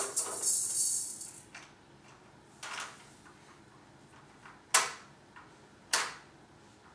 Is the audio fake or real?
real